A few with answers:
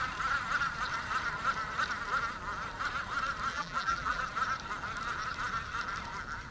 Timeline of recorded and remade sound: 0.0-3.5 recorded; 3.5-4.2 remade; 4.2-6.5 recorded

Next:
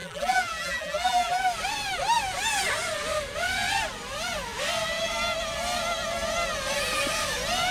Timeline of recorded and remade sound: 0.0-1.4 remade; 1.4-7.7 recorded

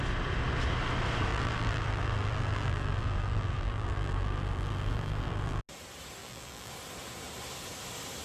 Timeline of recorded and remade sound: 0.0-1.3 recorded; 1.3-5.6 remade; 5.6-6.2 recorded; 6.2-6.7 remade; 6.7-8.2 recorded